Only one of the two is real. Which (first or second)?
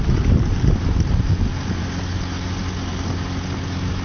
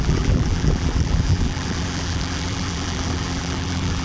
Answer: first